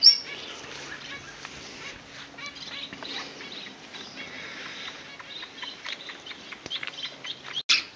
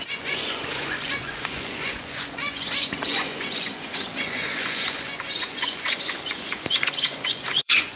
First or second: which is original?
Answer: first